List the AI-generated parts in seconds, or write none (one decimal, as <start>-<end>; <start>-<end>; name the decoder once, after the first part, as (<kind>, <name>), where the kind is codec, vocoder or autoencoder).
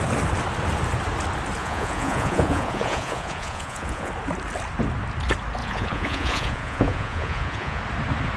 1.6-4.1 (vocoder, Vocos); 5.6-7.8